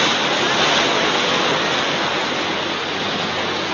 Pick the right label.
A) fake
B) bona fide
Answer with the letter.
B